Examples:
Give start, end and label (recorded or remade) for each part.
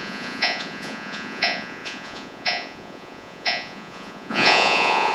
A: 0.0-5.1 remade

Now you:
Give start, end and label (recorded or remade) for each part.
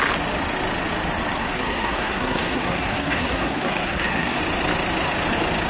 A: 0.0-1.4 recorded; 1.4-4.4 remade; 4.4-5.7 recorded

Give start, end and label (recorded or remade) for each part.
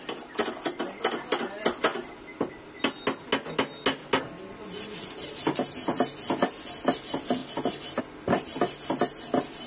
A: 0.0-9.7 recorded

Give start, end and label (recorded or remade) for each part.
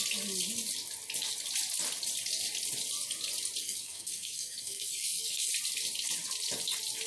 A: 0.0-3.6 recorded; 3.6-5.5 remade; 5.5-7.1 recorded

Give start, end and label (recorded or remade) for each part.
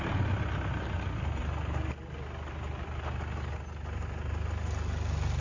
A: 0.0-5.4 recorded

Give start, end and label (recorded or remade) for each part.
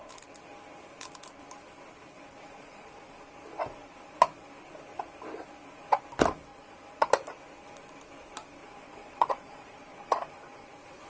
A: 0.0-2.5 recorded; 2.5-3.2 remade; 3.2-6.5 recorded; 6.5-7.1 remade; 7.1-8.6 recorded; 8.6-10.7 remade; 10.7-11.1 recorded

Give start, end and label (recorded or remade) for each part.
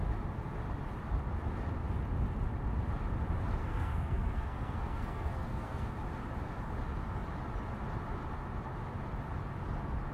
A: 0.0-3.6 recorded; 3.6-5.9 remade; 5.9-10.1 recorded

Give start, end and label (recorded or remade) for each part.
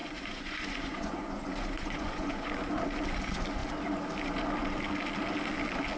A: 0.0-2.5 remade; 2.5-6.0 recorded